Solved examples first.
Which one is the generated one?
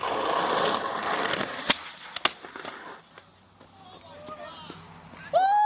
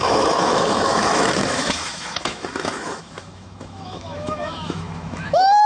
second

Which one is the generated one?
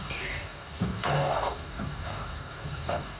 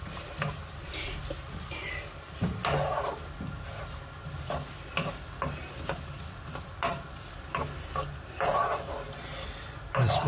first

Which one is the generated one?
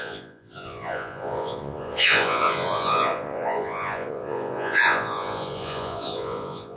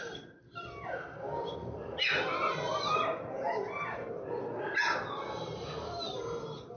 first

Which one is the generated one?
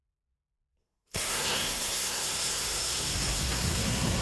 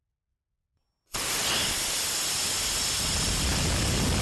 first